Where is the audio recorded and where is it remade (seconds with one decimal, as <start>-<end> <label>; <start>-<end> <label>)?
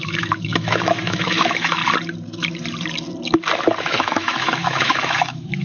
0.0-1.8 remade; 1.8-3.8 recorded; 3.8-5.6 remade